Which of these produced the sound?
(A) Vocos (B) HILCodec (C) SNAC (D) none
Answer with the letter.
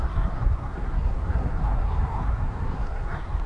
C